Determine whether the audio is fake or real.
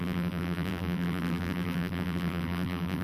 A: fake